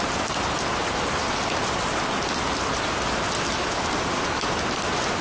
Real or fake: real